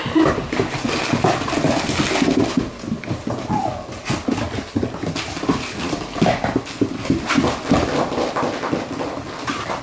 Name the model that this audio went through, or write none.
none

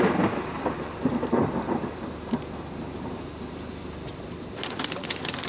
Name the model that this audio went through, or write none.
vocoder, BigVGAN v2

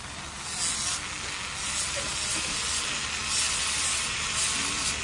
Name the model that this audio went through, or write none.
none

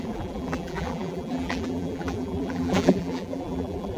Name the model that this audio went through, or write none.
vocoder, BigVGAN v2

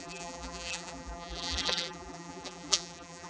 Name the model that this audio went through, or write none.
vocoder, BigVGAN v2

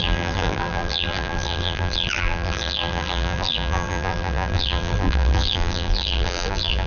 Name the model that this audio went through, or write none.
vocoder, BigVGAN v2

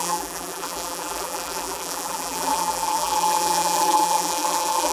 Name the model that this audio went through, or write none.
vocoder, BigVGAN v2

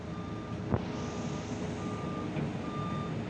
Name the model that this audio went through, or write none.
none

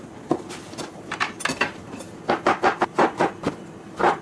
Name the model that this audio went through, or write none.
none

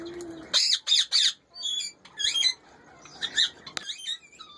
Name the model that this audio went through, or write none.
none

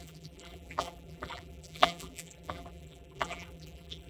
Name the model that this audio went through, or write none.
vocoder, BigVGAN v2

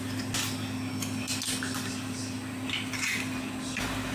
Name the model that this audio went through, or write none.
none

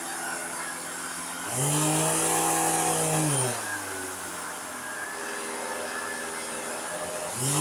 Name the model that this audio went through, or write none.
none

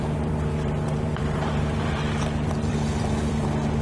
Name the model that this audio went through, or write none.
vocoder, BigVGAN v2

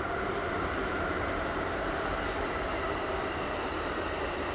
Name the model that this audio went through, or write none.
vocoder, BigVGAN v2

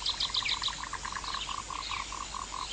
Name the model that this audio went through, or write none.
vocoder, BigVGAN v2